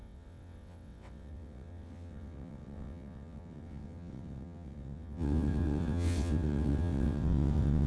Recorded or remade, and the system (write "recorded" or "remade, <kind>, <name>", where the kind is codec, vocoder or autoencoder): remade, vocoder, WaveNeXt